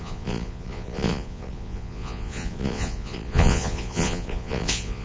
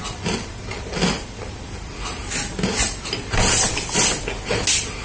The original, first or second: second